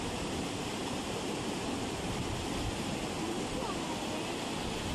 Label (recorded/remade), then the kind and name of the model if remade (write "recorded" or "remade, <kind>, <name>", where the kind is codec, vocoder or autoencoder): recorded